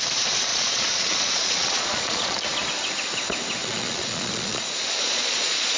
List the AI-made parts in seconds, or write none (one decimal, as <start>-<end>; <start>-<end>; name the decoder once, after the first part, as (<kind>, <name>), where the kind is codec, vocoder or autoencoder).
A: 0.5-2.4 (vocoder, Vocos); 3.6-5.8